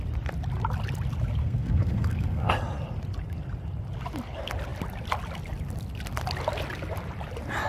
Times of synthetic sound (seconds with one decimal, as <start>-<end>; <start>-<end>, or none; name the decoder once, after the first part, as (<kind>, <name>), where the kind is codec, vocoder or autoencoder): 1.4-2.5 (codec, SNAC)